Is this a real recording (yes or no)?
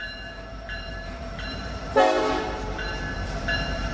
no